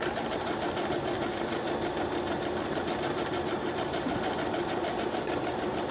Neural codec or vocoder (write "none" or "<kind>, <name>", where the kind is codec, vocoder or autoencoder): none